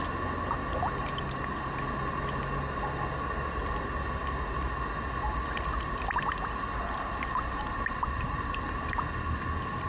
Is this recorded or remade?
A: recorded